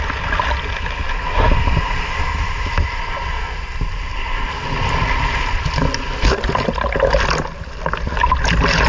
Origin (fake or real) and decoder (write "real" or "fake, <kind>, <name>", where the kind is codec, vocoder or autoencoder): real